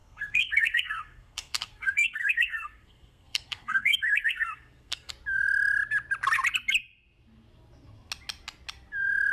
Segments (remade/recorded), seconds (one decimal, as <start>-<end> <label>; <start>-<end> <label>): 0.0-5.1 remade; 5.1-9.3 recorded